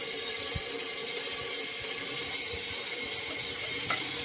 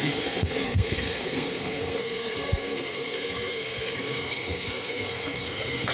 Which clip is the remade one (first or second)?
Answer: second